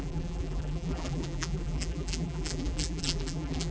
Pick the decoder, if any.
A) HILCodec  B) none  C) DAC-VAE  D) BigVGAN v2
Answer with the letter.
D